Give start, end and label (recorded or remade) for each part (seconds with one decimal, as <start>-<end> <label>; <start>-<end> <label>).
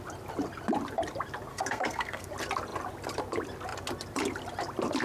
0.0-1.5 recorded; 1.5-2.3 remade; 2.3-5.0 recorded